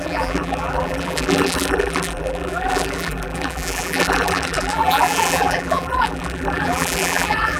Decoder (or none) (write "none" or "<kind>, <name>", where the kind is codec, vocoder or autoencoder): vocoder, BigVGAN v2